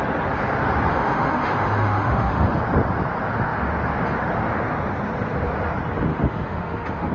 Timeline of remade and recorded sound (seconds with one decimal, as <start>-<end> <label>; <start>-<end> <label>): 0.0-0.9 recorded; 0.9-2.6 remade; 2.6-6.1 recorded; 6.1-7.1 remade